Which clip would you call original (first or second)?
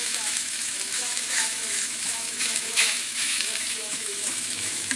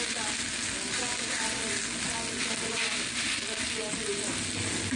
second